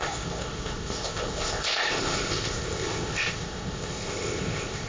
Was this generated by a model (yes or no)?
yes